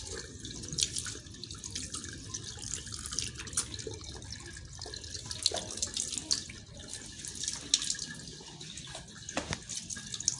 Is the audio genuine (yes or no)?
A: yes